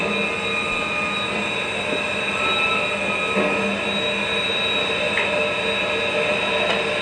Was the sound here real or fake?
real